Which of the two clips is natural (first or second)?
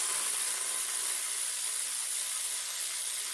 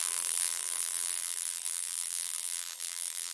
first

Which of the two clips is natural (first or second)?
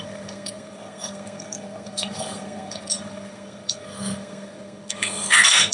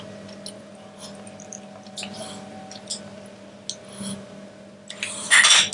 second